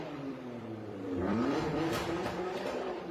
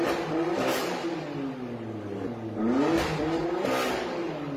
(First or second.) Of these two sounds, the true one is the second